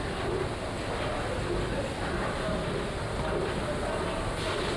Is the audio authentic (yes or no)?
yes